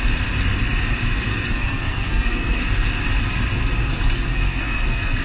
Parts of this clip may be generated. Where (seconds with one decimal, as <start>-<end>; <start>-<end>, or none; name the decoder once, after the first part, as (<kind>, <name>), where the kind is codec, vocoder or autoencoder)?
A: 1.3-2.6 (codec, SNAC); 4.3-5.2